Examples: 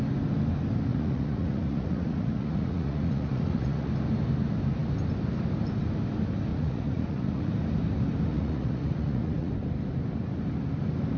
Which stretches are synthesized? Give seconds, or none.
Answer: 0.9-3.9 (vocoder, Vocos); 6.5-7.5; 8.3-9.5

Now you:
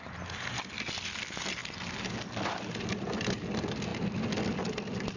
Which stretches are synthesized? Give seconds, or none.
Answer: none